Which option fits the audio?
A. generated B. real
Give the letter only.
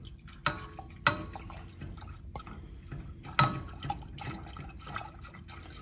B